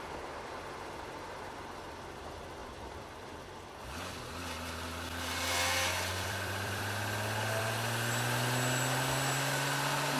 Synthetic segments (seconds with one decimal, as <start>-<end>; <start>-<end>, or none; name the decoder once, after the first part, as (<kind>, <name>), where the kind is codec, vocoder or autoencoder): 2.6-3.7 (vocoder, BigVGAN v2); 6.1-7.6